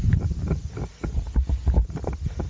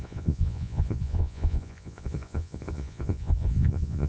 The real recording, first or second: first